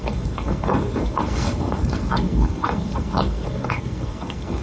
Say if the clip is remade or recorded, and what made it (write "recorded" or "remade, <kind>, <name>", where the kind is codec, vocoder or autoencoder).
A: remade, codec, SNAC